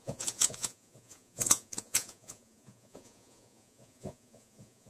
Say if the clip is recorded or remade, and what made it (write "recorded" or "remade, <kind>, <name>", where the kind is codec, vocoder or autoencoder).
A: remade, vocoder, Vocos